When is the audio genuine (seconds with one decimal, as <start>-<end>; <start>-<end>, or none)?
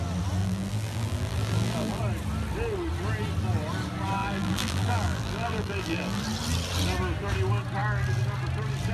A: 0.0-0.4; 2.0-4.2; 6.2-8.9